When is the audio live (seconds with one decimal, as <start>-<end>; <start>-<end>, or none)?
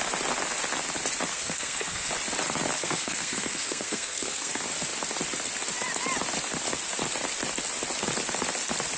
0.0-1.3; 2.1-2.8; 4.5-9.0